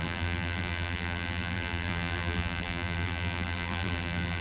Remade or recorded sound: remade